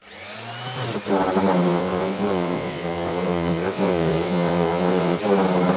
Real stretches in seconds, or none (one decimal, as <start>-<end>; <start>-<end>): 0.0-1.7; 5.2-5.8